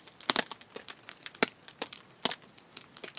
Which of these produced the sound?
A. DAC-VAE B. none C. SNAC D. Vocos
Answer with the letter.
B